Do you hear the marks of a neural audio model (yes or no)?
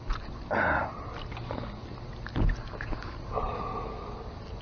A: no